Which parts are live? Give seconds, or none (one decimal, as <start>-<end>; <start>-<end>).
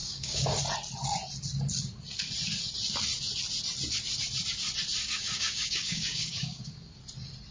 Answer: 0.6-5.0; 6.9-7.5